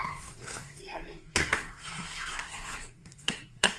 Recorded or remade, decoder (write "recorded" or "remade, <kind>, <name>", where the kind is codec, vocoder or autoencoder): remade, codec, SNAC